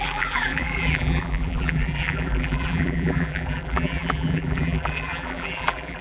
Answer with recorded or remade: remade